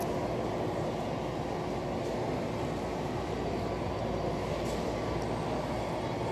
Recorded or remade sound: recorded